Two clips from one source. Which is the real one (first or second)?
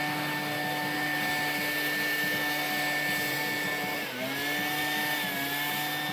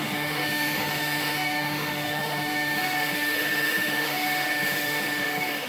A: first